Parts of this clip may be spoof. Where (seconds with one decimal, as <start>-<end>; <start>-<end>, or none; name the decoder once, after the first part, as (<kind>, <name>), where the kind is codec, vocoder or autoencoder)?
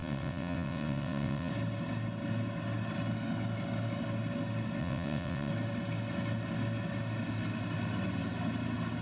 0.0-1.5 (vocoder, WaveNeXt); 4.8-5.5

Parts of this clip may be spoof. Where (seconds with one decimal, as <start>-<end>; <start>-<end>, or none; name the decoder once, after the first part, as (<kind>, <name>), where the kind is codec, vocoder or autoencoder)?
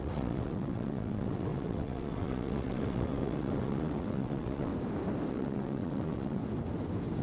0.0-4.7 (vocoder, WaveNeXt); 5.3-6.4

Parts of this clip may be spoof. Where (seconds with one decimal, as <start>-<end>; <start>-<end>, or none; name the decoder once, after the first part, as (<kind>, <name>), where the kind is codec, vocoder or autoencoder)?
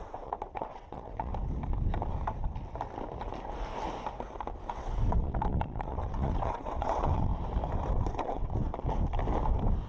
0.0-1.3 (vocoder, WaveNeXt); 4.7-7.3; 7.9-8.6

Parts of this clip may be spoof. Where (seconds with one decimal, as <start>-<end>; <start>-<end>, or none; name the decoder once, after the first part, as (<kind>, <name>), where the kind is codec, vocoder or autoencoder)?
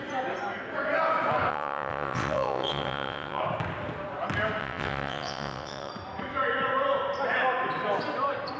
1.5-3.4 (vocoder, WaveNeXt); 4.6-5.9